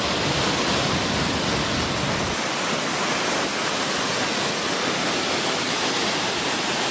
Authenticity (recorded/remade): recorded